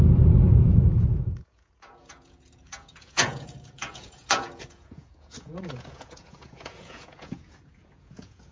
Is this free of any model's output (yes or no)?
no